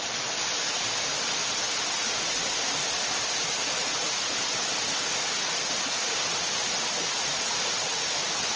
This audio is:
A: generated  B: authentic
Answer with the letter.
B